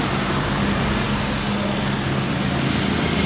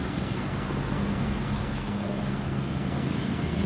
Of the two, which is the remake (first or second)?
second